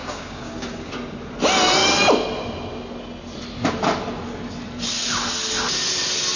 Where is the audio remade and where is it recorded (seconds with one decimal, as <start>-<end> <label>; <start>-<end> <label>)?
0.0-0.9 remade; 0.9-6.4 recorded